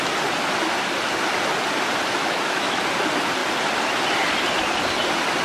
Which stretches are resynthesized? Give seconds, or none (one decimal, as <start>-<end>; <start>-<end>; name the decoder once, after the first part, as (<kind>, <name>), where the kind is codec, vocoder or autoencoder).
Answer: 2.2-2.8 (autoencoder, DAC-VAE)